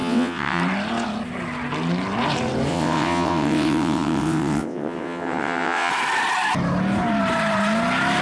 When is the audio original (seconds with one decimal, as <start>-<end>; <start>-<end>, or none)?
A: 0.6-2.7; 5.9-8.2

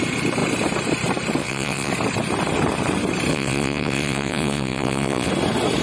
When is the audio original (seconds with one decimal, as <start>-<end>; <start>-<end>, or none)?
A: 0.0-1.4; 1.9-3.3; 5.3-5.8